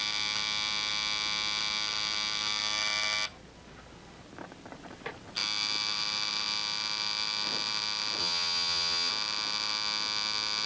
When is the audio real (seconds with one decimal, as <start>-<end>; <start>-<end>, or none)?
0.0-8.2; 9.1-10.7